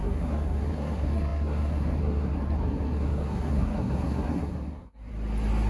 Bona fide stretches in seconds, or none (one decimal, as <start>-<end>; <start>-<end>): 5.1-5.7